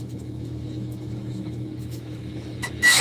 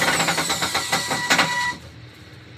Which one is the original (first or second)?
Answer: second